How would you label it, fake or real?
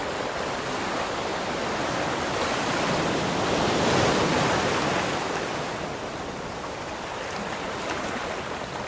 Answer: real